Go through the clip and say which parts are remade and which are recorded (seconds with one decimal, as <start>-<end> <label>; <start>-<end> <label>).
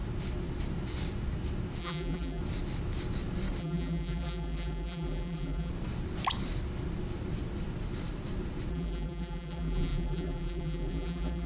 0.0-1.8 recorded; 1.8-2.4 remade; 2.4-3.6 recorded; 3.6-5.7 remade; 5.7-8.7 recorded; 8.7-11.5 remade